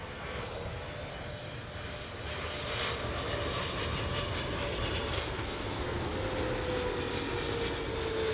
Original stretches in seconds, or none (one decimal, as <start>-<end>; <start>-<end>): 1.1-5.1; 6.1-8.3